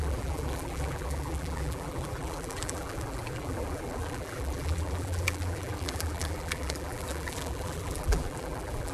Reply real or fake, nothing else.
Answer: fake